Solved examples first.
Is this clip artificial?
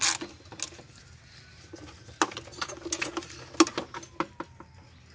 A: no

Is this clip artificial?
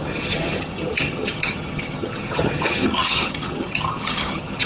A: yes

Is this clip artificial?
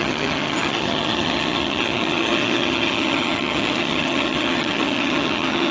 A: yes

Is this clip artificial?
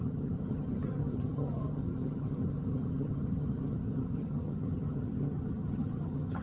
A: yes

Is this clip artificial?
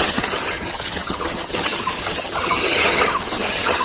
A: yes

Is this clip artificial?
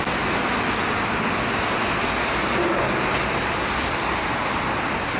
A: no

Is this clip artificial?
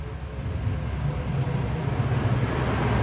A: no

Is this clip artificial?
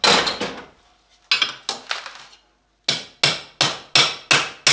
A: no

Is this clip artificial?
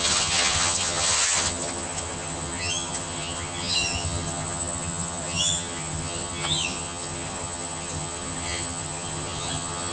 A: yes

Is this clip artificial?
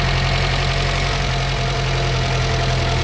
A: no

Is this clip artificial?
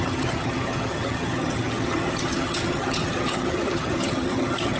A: yes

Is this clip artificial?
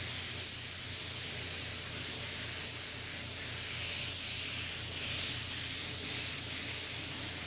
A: no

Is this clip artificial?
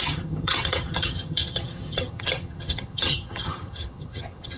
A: yes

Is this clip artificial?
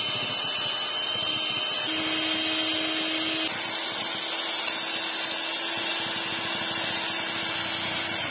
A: no